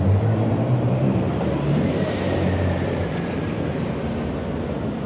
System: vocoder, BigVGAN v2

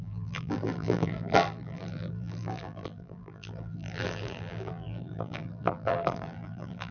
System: vocoder, BigVGAN v2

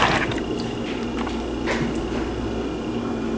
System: none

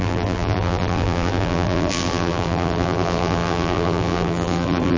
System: vocoder, BigVGAN v2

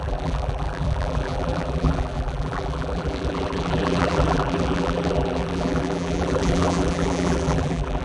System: vocoder, BigVGAN v2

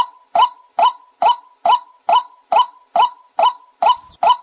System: vocoder, BigVGAN v2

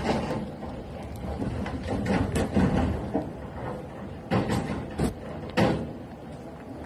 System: none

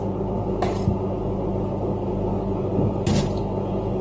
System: none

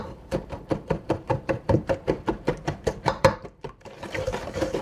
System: vocoder, BigVGAN v2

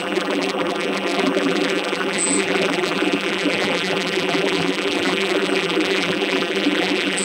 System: vocoder, BigVGAN v2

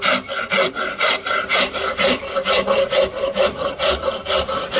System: vocoder, BigVGAN v2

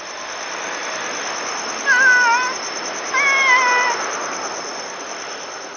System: none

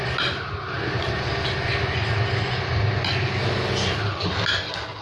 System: none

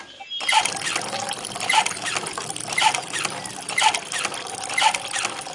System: none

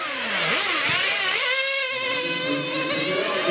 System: none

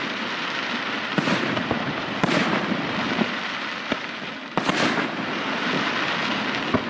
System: vocoder, BigVGAN v2